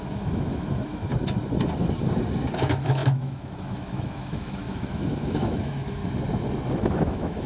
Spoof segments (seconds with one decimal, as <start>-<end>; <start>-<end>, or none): 0.0-1.1; 2.5-6.0; 6.7-7.5